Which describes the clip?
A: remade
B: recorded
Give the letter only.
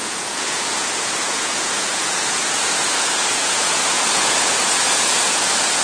A